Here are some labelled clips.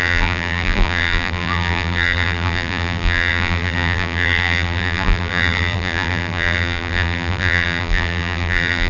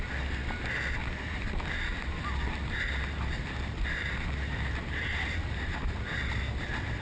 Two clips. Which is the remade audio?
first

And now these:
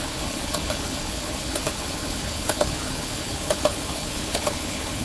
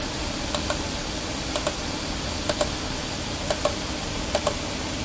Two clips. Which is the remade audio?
first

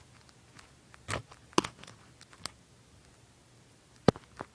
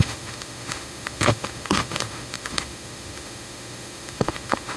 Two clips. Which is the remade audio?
second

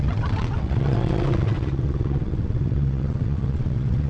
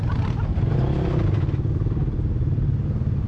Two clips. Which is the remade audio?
first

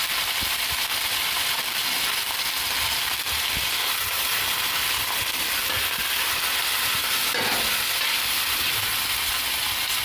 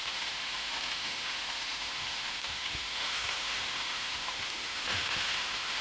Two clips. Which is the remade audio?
second